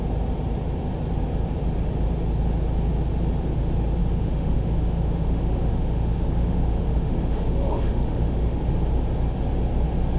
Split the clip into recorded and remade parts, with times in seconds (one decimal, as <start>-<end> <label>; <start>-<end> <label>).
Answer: 0.0-4.0 recorded; 4.0-8.6 remade; 8.6-10.2 recorded